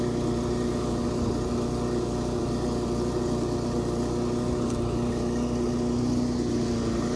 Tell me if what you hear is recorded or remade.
recorded